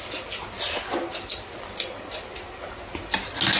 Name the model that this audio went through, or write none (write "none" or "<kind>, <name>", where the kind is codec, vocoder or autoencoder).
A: none